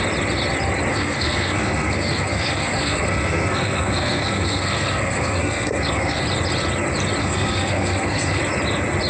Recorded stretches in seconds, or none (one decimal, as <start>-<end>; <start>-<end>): 0.0-0.9; 6.2-7.2; 8.4-9.1